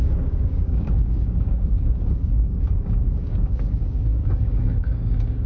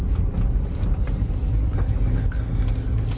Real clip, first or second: second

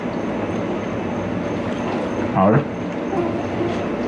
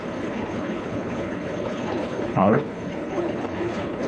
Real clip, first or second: first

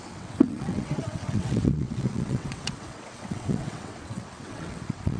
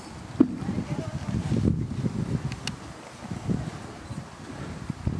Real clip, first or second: second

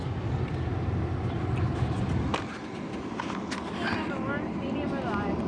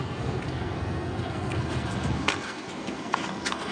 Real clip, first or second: first